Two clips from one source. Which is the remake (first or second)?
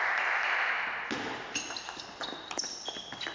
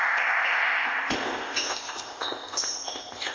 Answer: second